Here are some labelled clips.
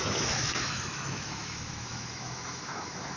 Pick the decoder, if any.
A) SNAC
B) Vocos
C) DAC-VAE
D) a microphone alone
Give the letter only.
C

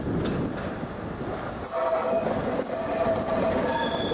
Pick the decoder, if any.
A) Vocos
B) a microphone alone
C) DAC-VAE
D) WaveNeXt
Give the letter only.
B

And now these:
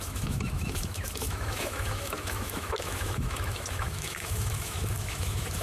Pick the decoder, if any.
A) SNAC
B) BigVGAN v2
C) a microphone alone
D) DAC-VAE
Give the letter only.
D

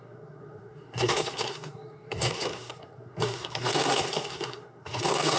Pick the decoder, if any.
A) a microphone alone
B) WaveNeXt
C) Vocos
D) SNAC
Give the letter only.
D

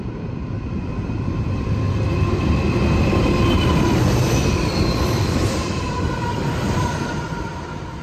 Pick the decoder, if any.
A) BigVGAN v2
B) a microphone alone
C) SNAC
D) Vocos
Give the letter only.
A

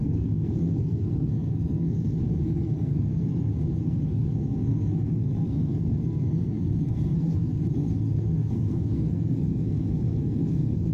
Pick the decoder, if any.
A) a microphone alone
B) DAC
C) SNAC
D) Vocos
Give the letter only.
C